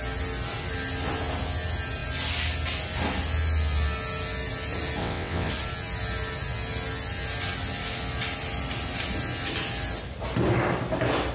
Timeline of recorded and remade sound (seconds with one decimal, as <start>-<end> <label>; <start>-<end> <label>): 0.0-5.0 recorded; 5.0-5.5 remade; 5.5-11.3 recorded